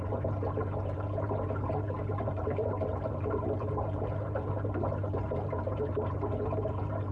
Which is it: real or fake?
fake